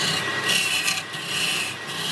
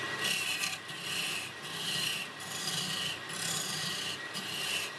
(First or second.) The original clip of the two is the first